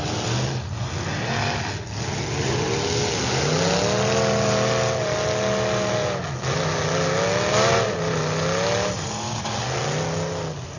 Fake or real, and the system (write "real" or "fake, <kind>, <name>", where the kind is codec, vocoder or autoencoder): real